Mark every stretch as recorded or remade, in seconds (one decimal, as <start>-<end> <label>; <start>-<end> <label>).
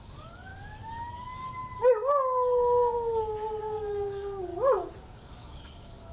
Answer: 0.0-0.5 remade; 0.5-1.1 recorded; 1.1-1.6 remade; 1.6-3.6 recorded; 3.6-4.5 remade; 4.5-5.0 recorded; 5.0-6.1 remade